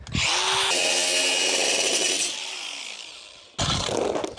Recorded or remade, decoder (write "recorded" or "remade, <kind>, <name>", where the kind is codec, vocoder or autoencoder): recorded